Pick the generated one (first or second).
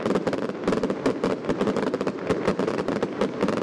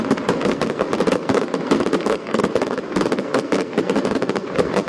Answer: second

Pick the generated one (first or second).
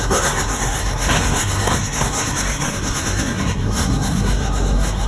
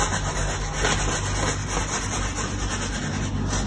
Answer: first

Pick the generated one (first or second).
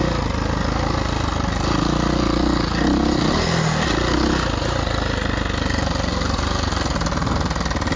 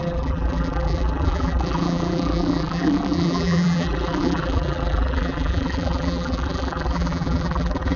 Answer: second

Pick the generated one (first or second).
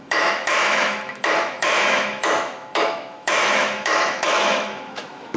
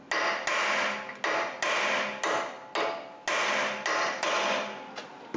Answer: first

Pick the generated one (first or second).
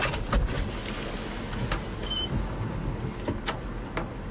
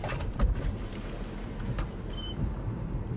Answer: second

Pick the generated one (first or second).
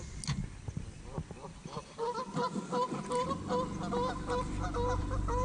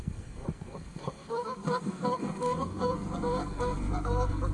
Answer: second